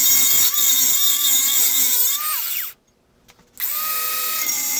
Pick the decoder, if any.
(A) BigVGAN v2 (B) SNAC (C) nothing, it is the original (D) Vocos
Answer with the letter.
C